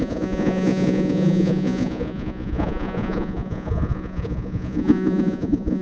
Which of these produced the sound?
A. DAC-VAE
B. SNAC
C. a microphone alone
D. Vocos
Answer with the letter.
D